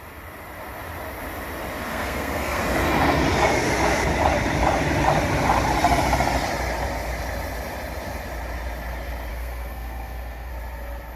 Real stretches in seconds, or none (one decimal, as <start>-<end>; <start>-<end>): 0.0-1.9; 2.6-9.3; 10.5-11.2